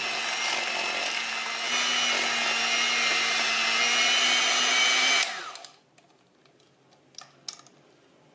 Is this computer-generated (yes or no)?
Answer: no